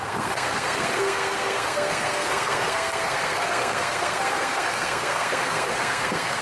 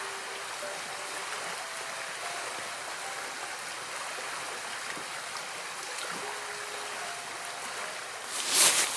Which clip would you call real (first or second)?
second